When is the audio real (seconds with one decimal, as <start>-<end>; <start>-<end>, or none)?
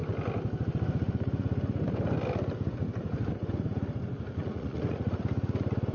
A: 0.0-4.4; 5.2-5.9